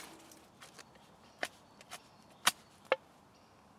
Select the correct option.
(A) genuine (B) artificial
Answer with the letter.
A